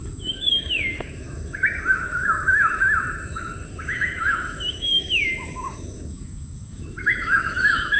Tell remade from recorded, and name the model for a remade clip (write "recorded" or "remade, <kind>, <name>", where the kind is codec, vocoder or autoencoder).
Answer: remade, autoencoder, DAC-VAE